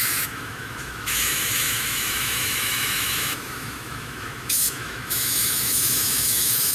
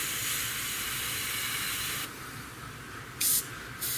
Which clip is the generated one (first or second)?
first